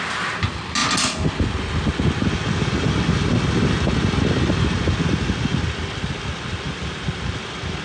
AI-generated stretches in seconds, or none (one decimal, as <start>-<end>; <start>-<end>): none